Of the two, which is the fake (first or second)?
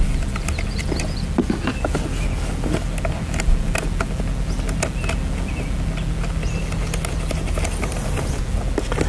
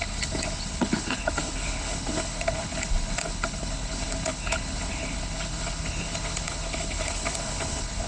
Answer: second